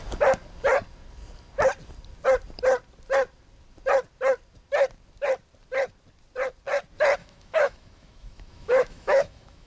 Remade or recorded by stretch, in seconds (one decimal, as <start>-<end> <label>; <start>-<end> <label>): 0.0-7.2 recorded; 7.2-9.7 remade